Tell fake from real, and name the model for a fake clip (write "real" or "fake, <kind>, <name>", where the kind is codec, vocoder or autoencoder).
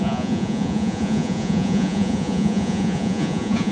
fake, vocoder, Vocos